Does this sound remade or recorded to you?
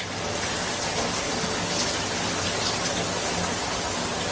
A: recorded